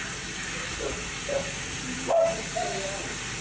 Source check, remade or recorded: recorded